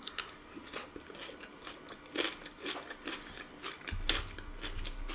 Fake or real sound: real